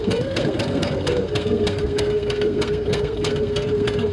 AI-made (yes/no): yes